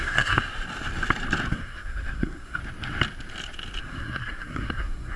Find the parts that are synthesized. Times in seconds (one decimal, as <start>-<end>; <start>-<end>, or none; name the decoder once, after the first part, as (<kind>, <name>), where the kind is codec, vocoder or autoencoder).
0.0-0.4 (codec, SNAC); 1.5-2.6; 3.8-5.2